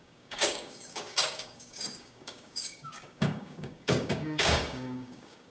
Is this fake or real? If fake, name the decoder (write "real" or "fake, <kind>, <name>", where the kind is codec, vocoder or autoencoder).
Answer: fake, codec, DAC